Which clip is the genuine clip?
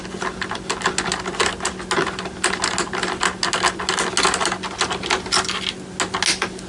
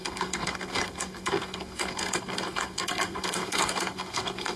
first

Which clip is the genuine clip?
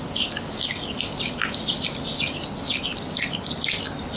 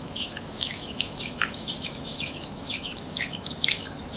first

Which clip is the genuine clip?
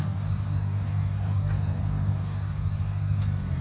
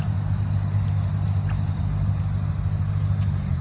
second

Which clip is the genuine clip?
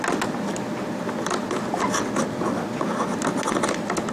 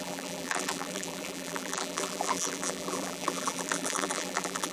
first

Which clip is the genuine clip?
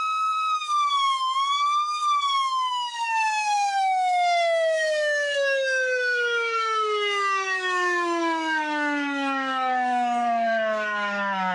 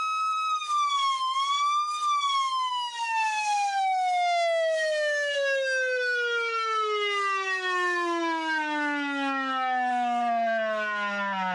second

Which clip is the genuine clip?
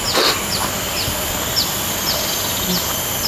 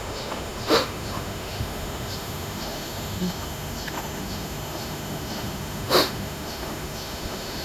first